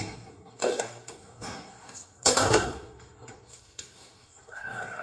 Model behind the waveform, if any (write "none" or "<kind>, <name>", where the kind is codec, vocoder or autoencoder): codec, SNAC